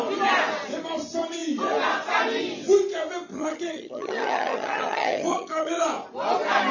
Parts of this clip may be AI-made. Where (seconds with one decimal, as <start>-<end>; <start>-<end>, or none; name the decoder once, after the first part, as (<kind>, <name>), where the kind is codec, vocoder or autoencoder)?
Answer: 3.3-5.7 (vocoder, HiFi-GAN)